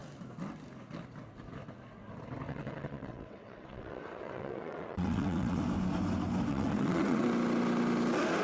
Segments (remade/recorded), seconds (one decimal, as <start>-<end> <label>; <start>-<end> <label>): 0.0-2.5 recorded; 2.5-5.6 remade; 5.6-6.5 recorded; 6.5-7.3 remade; 7.3-8.4 recorded